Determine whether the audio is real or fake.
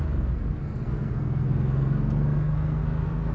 fake